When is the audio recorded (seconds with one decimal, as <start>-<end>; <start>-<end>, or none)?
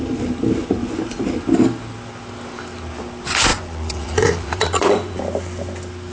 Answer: 0.0-0.6; 1.2-3.5; 5.2-6.1